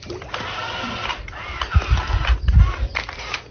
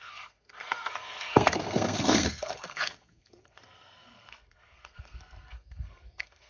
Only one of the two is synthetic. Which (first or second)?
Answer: second